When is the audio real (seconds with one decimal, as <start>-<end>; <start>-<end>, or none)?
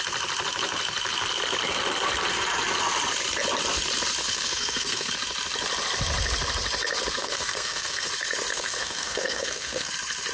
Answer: 0.0-4.2; 5.1-7.2; 8.1-8.5; 9.9-10.3